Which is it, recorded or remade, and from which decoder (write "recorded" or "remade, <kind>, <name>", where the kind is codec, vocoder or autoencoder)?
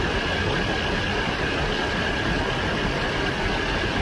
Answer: recorded